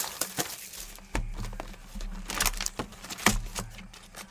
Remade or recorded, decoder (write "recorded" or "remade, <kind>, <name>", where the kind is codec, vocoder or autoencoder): recorded